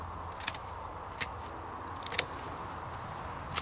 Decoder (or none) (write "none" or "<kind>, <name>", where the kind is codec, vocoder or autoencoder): none